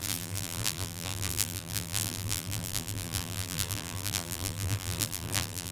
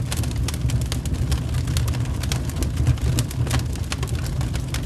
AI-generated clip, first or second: first